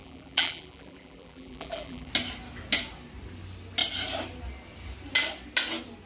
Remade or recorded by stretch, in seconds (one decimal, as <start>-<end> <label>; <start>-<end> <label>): 0.0-2.1 remade; 2.1-6.1 recorded